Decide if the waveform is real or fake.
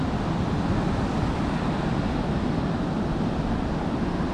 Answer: real